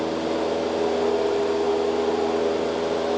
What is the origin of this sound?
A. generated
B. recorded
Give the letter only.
B